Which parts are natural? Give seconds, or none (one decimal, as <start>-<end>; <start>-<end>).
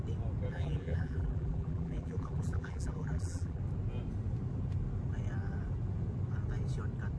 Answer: 0.0-0.5; 3.6-7.2